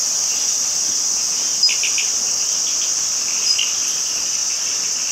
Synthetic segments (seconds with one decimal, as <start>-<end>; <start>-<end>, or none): none